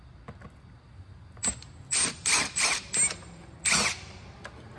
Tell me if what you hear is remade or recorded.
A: recorded